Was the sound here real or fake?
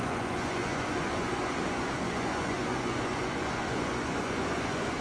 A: fake